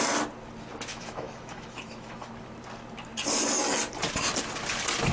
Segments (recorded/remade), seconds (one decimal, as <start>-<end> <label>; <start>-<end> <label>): 0.0-0.9 recorded; 0.9-2.3 remade; 2.3-5.1 recorded